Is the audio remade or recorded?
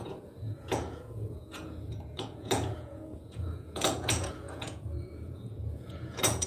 remade